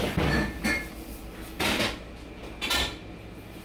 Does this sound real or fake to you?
real